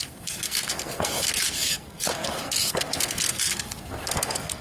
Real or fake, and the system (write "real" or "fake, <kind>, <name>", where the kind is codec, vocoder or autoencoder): fake, codec, SNAC